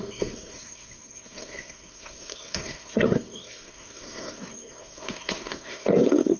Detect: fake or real fake